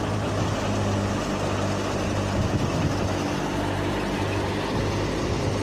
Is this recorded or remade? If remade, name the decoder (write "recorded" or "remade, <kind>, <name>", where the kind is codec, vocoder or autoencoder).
recorded